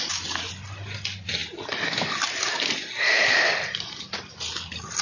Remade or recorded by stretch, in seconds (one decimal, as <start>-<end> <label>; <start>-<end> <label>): 0.0-5.0 recorded